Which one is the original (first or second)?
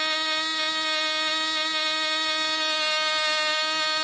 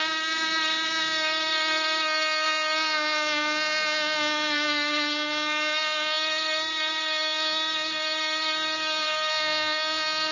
first